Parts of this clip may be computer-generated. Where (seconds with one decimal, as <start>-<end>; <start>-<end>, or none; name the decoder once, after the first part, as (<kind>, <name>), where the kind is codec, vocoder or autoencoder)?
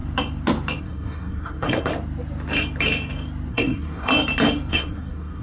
0.8-1.9 (codec, SNAC); 3.5-4.1; 4.7-5.4